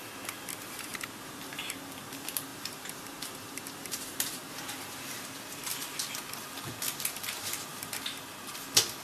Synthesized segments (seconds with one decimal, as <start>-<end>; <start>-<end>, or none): 2.5-6.2